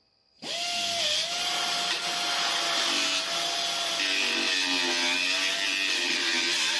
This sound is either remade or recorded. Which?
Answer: recorded